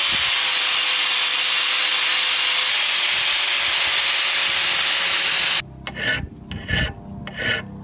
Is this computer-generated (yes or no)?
no